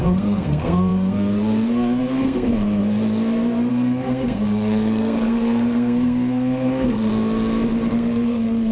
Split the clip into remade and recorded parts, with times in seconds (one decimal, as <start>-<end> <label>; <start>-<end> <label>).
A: 0.0-2.8 remade; 2.8-3.7 recorded; 3.7-7.1 remade; 7.1-7.9 recorded; 7.9-8.7 remade